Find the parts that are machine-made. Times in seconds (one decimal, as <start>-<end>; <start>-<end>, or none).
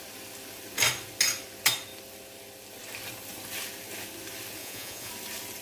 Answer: 4.6-5.1